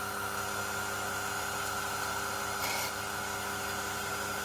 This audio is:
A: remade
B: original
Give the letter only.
B